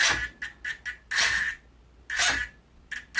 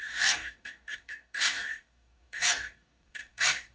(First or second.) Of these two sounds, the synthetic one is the second